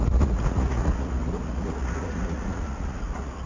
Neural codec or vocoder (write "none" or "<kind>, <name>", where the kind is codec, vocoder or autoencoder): vocoder, Vocos